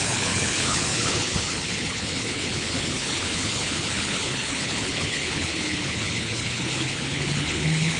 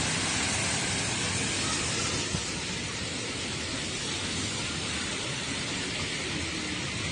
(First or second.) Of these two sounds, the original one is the second